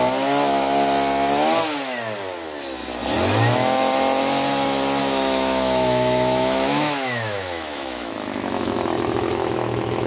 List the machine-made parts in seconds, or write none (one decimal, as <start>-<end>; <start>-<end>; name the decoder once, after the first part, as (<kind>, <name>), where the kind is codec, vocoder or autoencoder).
5.0-10.1 (autoencoder, DAC-VAE)